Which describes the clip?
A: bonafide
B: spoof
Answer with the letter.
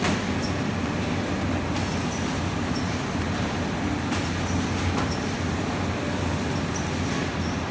A